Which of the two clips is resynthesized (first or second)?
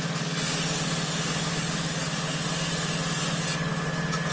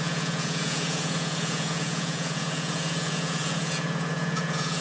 second